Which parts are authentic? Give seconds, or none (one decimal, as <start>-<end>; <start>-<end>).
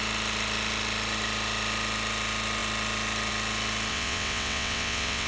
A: 0.0-3.9